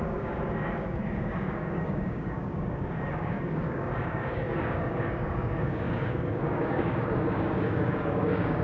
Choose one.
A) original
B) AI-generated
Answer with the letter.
B